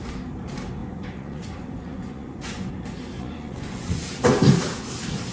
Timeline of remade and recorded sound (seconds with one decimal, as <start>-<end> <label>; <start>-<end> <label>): 0.0-0.8 recorded; 0.8-2.7 remade; 2.7-3.2 recorded; 3.2-4.0 remade; 4.0-5.3 recorded